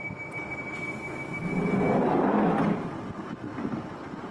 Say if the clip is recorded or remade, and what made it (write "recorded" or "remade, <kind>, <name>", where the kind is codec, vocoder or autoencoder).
recorded